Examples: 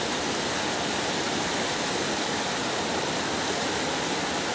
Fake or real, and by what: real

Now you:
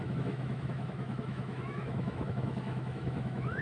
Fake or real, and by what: fake, autoencoder, DAC-VAE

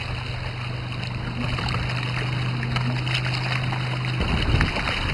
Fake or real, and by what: real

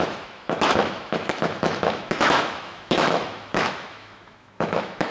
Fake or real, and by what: fake, autoencoder, DAC-VAE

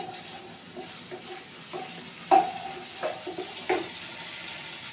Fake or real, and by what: real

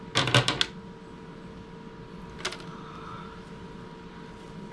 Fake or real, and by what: real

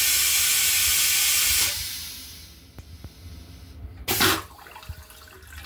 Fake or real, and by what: real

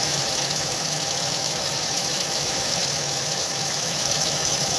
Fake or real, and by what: fake, autoencoder, DAC-VAE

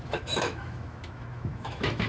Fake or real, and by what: fake, autoencoder, DAC-VAE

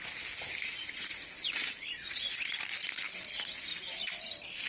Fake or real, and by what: real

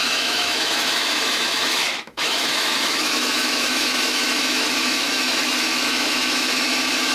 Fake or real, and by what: fake, autoencoder, DAC-VAE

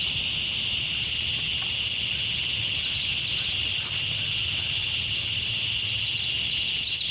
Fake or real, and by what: real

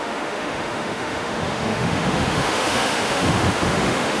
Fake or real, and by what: fake, autoencoder, DAC-VAE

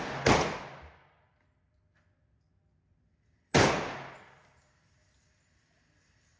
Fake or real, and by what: real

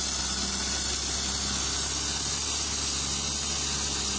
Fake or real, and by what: real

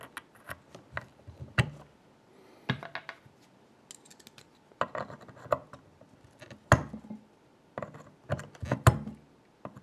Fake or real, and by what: real